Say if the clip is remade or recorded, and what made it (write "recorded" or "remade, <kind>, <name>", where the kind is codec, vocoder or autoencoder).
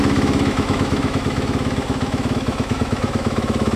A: remade, autoencoder, DAC-VAE